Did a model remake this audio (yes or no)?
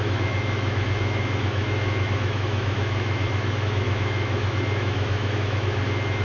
yes